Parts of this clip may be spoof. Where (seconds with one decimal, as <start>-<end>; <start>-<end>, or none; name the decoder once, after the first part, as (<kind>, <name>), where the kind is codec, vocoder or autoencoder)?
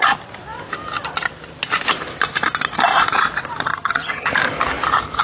3.7-4.3 (vocoder, HiFi-GAN)